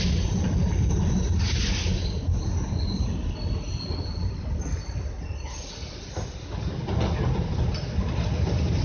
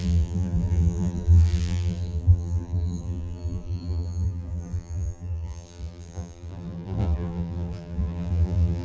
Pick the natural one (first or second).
first